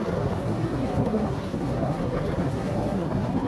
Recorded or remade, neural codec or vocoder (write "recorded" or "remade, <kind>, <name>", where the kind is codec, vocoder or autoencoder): remade, codec, SNAC